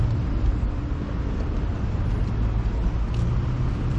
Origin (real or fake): real